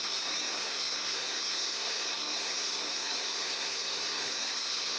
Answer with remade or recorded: remade